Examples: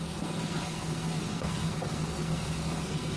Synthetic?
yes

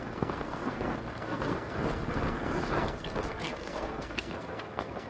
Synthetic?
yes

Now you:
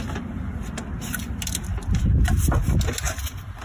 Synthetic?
no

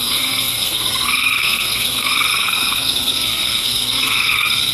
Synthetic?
yes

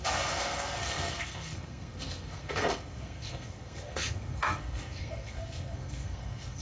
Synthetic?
yes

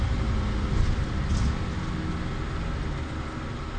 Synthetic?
no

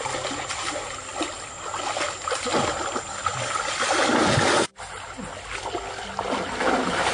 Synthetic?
no